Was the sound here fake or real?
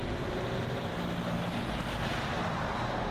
real